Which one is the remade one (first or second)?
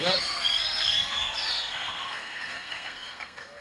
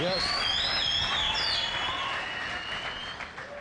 first